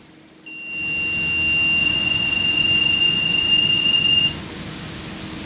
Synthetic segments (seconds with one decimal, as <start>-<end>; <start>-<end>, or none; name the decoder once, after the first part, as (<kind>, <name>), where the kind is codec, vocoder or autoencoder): 1.8-4.4 (vocoder, Vocos)